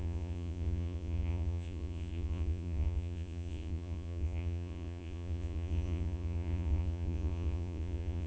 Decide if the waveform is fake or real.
fake